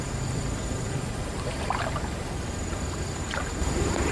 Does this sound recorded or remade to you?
remade